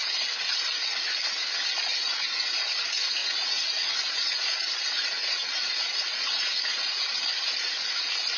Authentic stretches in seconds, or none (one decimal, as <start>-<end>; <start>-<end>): 0.0-1.9; 2.8-3.2; 7.0-8.4